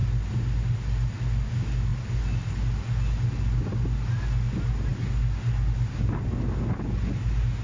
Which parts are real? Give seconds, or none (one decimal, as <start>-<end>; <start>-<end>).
0.0-7.6